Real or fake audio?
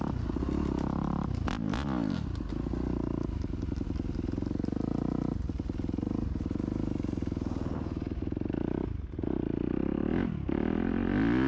real